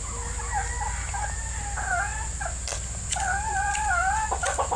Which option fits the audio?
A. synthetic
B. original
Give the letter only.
B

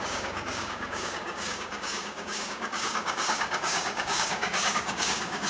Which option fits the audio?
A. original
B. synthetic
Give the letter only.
B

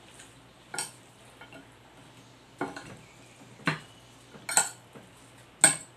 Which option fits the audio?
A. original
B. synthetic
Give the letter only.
A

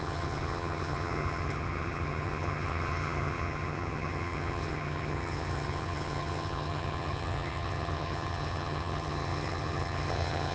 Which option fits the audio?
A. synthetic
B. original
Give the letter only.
A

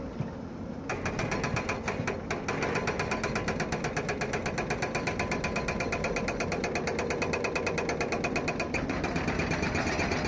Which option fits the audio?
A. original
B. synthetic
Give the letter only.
A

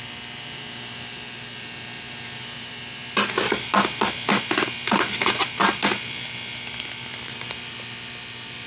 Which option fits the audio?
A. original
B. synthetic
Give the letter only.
A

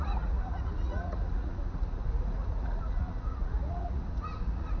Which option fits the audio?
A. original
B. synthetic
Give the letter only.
B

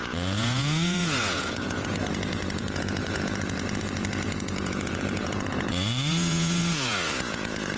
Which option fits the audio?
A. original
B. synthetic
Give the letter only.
B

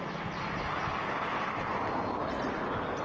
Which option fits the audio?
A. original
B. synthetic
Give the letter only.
A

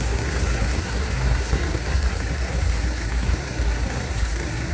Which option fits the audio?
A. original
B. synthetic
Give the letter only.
B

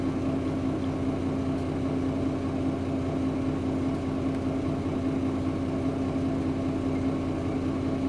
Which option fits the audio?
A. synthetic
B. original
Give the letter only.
B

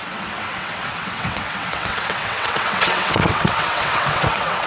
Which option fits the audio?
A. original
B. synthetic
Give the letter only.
B